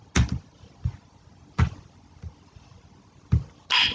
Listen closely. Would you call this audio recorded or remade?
recorded